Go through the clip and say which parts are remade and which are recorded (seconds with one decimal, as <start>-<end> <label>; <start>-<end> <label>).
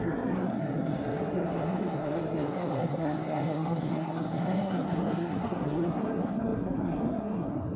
0.0-7.8 remade